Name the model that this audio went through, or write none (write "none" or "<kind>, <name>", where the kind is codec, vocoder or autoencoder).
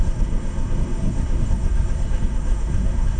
codec, SNAC